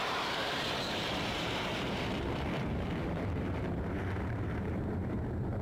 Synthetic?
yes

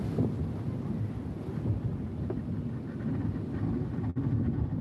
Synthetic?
no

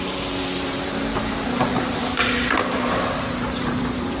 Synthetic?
yes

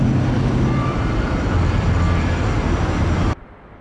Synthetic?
yes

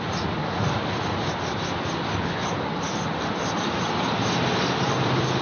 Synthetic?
yes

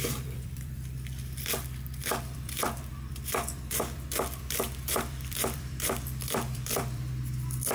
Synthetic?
yes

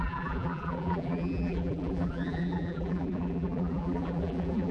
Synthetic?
yes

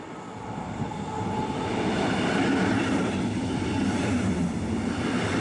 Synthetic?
yes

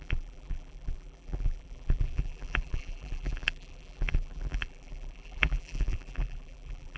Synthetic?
yes